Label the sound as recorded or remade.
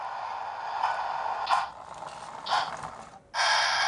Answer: recorded